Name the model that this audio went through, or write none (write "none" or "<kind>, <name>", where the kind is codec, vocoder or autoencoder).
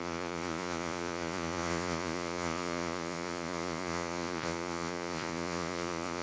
vocoder, Vocos